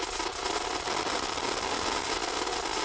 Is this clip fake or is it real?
real